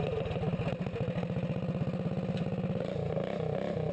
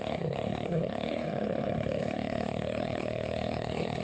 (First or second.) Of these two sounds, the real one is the first